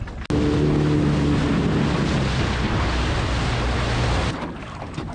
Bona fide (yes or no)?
yes